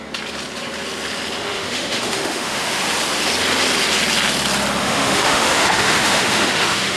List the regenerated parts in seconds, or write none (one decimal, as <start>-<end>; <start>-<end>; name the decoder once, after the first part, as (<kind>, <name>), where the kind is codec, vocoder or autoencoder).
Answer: 1.4-2.8 (autoencoder, DAC-VAE); 4.8-7.0